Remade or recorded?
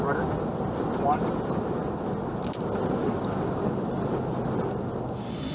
recorded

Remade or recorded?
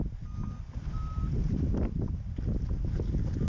recorded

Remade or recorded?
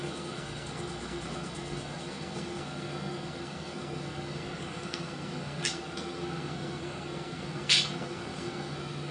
remade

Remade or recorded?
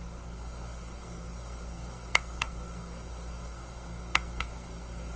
remade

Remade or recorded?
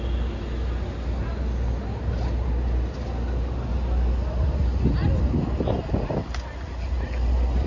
recorded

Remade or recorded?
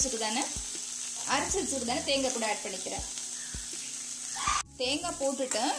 recorded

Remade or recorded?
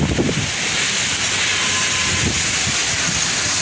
recorded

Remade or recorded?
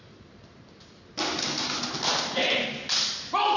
recorded